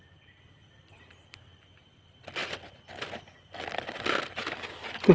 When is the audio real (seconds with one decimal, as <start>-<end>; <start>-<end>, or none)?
0.0-5.1